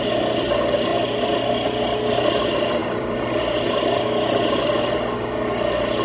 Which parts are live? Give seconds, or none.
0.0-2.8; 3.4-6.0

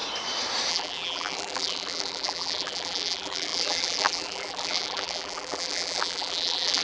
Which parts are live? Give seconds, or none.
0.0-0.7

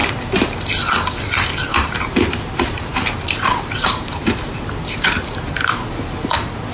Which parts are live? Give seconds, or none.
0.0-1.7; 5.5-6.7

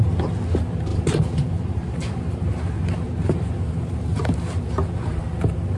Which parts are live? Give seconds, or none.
0.0-0.9; 4.4-5.8

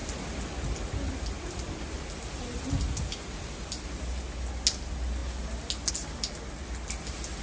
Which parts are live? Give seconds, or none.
0.0-7.4